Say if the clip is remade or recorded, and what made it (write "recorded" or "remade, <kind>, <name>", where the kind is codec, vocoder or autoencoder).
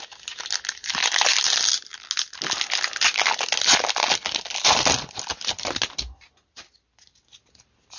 recorded